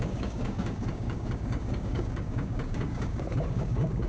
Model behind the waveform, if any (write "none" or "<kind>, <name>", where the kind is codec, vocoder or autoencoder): codec, DAC